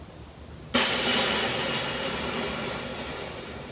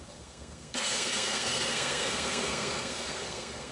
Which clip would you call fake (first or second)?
second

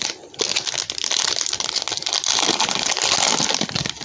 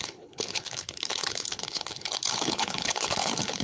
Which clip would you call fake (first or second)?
second